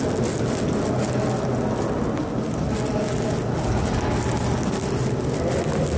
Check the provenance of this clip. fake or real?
real